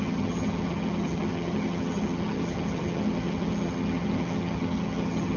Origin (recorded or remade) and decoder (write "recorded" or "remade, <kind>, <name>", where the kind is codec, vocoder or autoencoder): remade, vocoder, HiFi-GAN